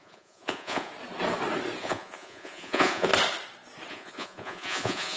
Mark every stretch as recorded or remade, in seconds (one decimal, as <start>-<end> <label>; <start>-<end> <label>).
0.0-0.9 remade; 0.9-1.8 recorded; 1.8-3.1 remade; 3.1-3.9 recorded; 3.9-5.2 remade